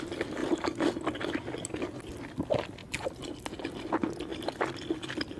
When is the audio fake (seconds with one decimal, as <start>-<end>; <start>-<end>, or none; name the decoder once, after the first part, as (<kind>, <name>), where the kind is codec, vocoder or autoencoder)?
0.4-0.9 (vocoder, BigVGAN v2)